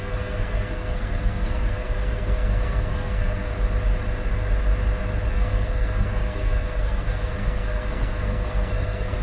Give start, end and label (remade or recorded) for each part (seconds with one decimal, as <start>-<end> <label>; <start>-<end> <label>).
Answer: 0.0-3.5 remade; 3.5-5.3 recorded; 5.3-9.2 remade